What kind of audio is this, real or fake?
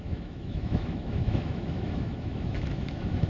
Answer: fake